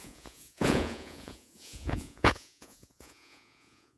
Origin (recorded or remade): remade